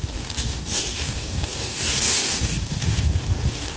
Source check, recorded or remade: remade